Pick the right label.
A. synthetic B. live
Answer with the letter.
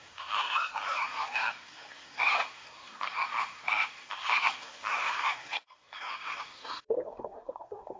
A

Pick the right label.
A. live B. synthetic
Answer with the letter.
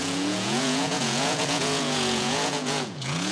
B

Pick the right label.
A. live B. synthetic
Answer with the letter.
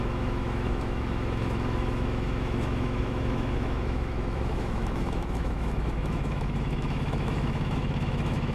B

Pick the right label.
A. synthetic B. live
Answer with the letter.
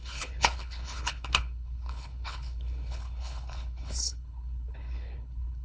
A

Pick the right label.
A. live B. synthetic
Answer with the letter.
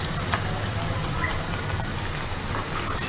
B